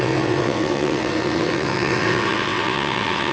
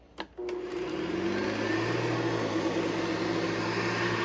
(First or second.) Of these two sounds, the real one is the second